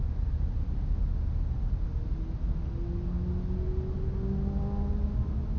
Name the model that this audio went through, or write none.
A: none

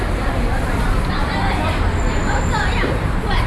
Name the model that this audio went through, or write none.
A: none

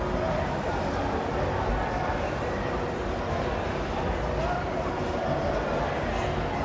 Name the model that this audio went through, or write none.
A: none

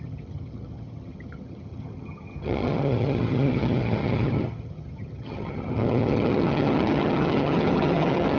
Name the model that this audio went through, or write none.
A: vocoder, HiFi-GAN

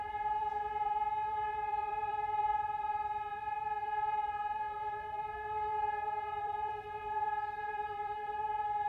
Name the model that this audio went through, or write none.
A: vocoder, BigVGAN v2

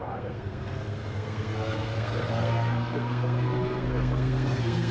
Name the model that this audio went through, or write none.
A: codec, SNAC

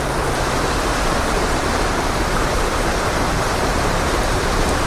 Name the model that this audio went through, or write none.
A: vocoder, BigVGAN v2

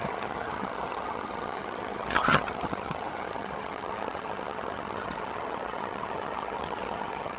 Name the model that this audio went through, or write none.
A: vocoder, HiFi-GAN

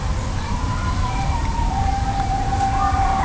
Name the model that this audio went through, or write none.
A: vocoder, BigVGAN v2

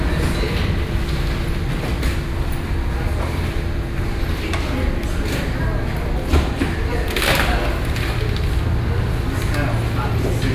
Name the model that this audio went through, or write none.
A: none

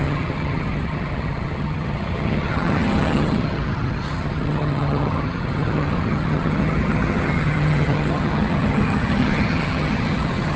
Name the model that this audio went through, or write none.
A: vocoder, HiFi-GAN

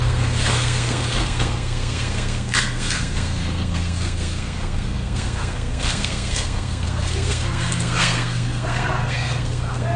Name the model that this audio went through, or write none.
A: codec, SNAC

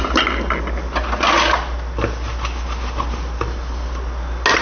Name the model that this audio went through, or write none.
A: none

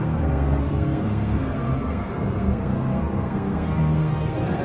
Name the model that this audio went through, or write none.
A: codec, SNAC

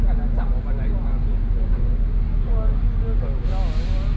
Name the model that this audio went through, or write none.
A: none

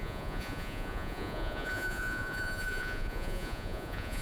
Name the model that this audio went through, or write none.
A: vocoder, Vocos